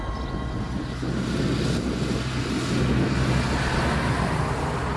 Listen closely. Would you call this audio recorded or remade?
recorded